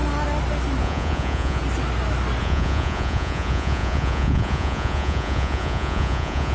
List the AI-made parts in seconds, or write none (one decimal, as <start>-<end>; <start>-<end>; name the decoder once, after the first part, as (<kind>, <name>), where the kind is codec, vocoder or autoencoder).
0.8-1.6 (vocoder, Vocos); 2.4-6.5